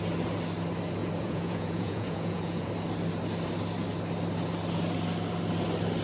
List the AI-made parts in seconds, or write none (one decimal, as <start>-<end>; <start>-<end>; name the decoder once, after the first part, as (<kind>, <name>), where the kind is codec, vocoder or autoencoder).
1.0-2.7 (vocoder, Vocos)